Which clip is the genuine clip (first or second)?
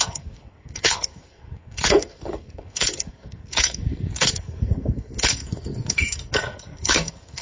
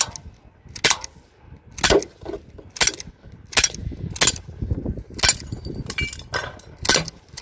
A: second